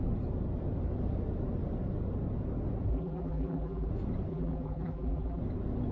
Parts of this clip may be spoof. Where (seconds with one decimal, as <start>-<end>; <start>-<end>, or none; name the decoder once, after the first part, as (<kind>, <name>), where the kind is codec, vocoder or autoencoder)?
2.9-3.9 (vocoder, BigVGAN v2); 4.3-5.4